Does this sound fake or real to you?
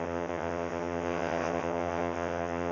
fake